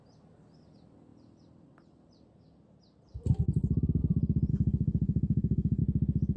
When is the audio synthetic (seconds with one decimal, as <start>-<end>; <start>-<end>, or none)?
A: 4.5-5.8